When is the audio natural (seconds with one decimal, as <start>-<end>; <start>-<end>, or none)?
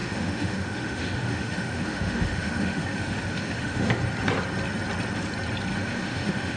4.0-5.7